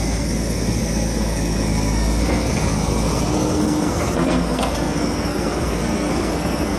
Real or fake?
fake